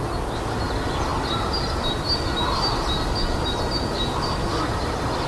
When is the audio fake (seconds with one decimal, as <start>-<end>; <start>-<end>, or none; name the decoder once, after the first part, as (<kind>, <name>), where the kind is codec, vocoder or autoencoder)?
none